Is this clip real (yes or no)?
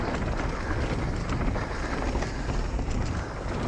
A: yes